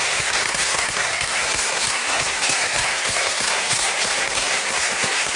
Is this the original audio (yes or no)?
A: no